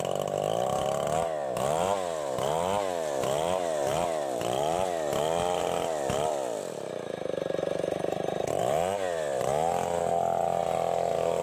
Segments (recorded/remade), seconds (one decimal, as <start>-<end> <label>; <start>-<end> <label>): 0.0-11.4 recorded